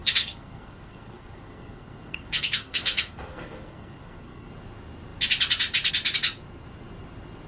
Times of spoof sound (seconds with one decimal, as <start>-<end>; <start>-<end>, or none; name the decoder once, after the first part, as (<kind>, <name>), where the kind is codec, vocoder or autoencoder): 0.0-4.5 (codec, SNAC)